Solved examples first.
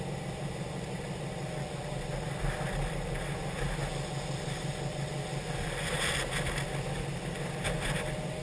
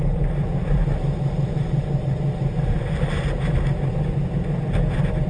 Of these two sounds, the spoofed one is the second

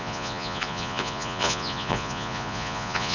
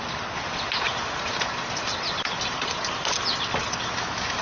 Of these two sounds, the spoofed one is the first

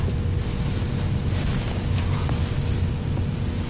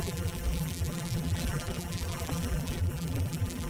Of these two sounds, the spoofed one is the second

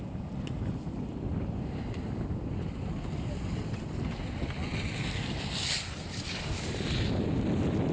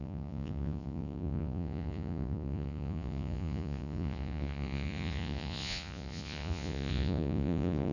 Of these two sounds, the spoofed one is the second